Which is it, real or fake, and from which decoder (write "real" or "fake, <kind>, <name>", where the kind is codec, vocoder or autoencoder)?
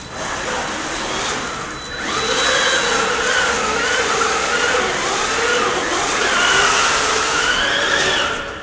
real